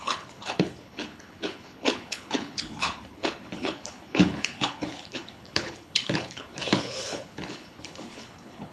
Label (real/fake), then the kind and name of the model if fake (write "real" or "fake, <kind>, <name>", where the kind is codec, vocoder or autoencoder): fake, codec, HILCodec